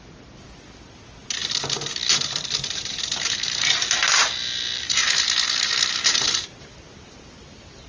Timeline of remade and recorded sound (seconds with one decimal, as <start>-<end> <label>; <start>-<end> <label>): 0.0-7.9 recorded